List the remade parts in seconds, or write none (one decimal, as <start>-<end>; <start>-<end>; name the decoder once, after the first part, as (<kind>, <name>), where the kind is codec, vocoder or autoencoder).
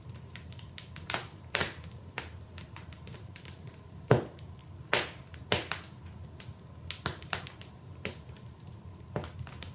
0.0-1.6 (vocoder, BigVGAN v2); 2.7-4.6; 7.2-9.7